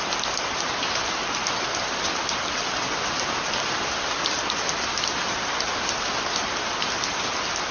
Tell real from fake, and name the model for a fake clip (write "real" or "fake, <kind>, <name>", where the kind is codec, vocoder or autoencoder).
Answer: real